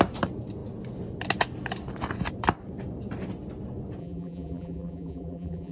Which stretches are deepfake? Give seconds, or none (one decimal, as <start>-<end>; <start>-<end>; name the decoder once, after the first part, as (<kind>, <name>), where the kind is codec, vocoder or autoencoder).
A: 4.0-5.7 (vocoder, BigVGAN v2)